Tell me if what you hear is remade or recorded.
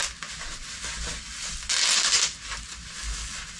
recorded